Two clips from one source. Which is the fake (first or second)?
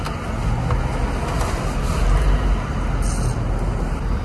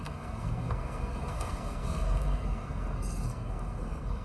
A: second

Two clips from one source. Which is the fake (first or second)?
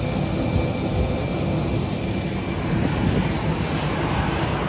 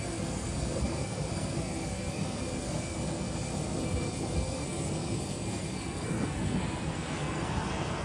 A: second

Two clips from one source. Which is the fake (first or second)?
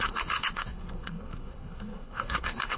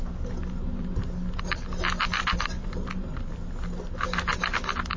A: first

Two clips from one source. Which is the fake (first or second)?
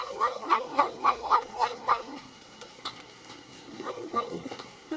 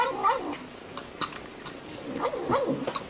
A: first